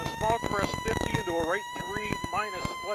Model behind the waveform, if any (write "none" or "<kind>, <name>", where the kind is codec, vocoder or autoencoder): autoencoder, DAC-VAE